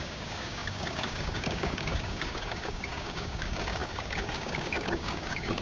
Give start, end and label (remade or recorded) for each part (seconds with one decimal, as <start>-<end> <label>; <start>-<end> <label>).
0.0-5.6 remade